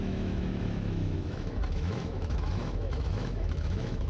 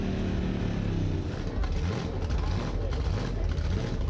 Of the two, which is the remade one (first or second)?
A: first